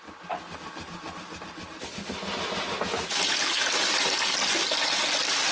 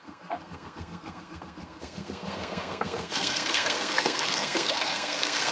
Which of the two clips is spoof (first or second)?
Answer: second